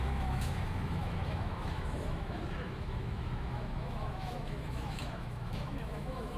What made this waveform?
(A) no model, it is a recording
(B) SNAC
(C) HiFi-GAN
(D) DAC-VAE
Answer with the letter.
D